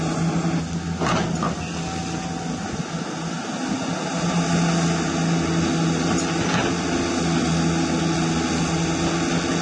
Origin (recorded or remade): recorded